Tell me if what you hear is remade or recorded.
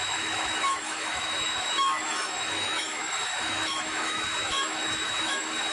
remade